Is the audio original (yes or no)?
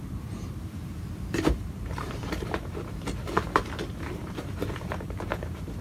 no